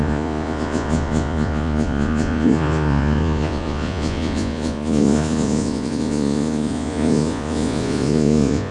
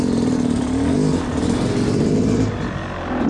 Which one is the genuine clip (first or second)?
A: second